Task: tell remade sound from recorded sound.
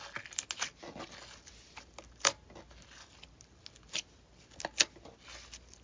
recorded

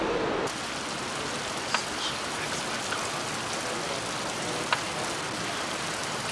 recorded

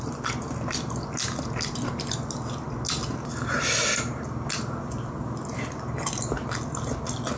recorded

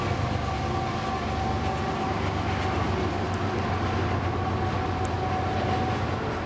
recorded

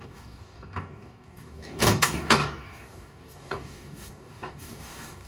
remade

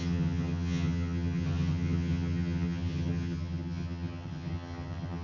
remade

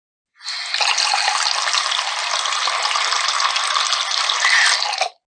recorded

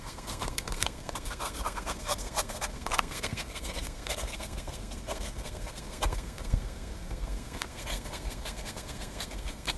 remade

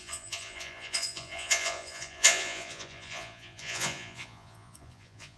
remade